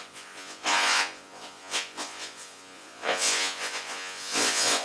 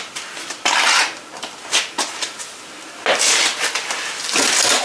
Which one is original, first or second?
second